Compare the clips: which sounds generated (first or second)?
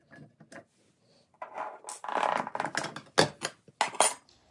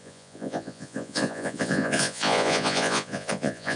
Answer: second